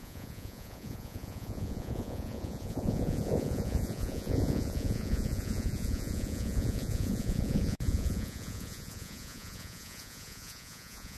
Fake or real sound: fake